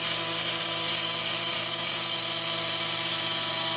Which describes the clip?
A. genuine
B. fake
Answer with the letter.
B